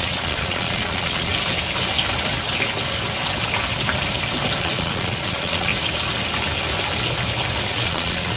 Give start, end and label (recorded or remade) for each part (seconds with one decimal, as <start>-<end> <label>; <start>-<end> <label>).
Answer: 0.0-1.3 remade; 1.3-4.6 recorded; 4.6-5.7 remade; 5.7-7.7 recorded; 7.7-8.4 remade